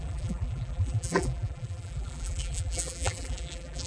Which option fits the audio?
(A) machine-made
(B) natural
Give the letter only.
A